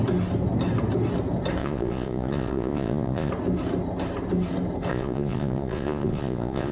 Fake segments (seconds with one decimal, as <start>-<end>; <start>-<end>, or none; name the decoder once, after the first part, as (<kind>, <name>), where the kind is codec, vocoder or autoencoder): 1.6-3.3 (vocoder, Vocos); 4.9-6.7